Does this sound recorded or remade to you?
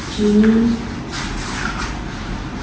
recorded